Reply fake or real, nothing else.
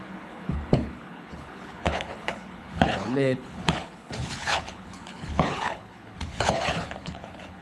fake